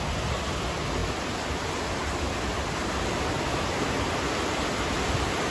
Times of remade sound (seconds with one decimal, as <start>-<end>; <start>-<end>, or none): none

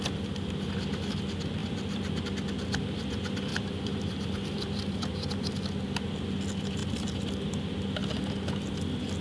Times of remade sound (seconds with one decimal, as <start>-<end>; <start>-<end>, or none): 3.5-5.7

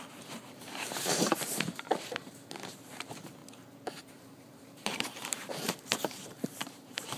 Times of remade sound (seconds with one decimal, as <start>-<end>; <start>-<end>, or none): 0.0-3.4; 4.1-7.2

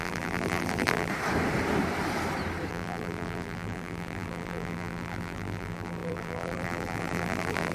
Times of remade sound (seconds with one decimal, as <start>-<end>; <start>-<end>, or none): 0.0-1.1; 2.7-7.7